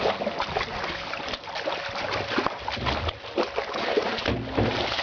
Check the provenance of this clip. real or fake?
real